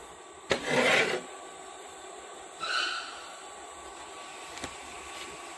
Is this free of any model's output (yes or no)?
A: yes